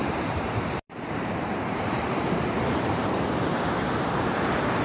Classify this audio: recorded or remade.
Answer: remade